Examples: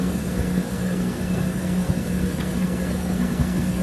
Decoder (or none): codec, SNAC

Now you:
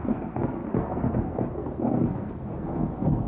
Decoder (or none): codec, SNAC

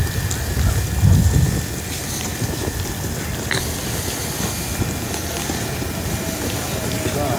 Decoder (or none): none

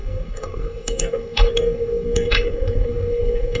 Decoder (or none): codec, SNAC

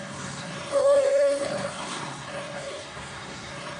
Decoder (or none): codec, SNAC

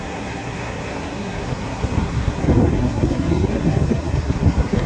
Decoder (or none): codec, SNAC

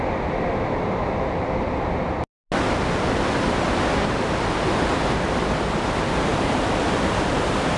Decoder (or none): none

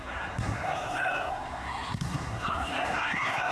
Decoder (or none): codec, SNAC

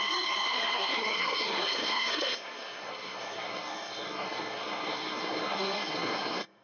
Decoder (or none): codec, SNAC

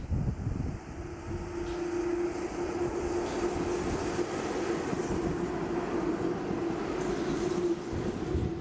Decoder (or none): none